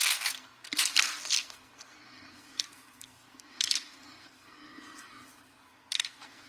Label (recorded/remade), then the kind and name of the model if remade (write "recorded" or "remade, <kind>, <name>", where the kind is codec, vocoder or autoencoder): remade, codec, SNAC